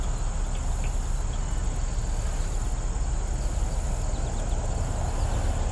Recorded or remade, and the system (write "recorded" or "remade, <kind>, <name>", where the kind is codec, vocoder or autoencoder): recorded